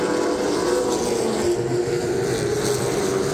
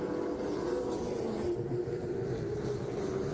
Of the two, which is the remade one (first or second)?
second